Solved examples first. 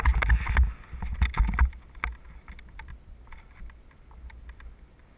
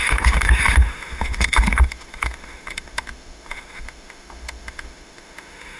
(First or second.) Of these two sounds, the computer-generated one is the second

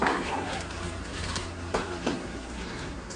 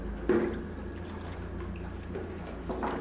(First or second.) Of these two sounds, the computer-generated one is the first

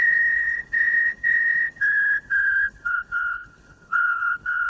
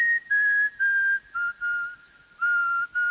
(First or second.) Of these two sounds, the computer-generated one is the first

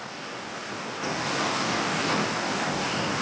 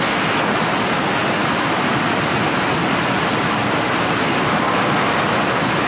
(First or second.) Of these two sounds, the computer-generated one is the first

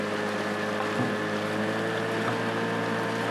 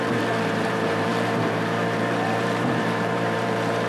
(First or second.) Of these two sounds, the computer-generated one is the second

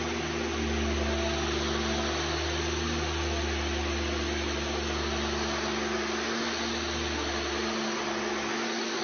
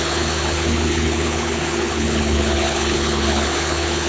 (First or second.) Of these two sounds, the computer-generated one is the second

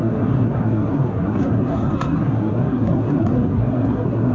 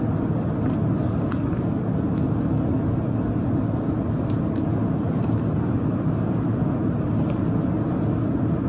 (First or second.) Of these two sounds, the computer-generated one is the first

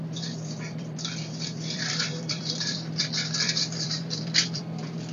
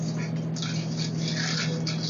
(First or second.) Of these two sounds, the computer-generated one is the first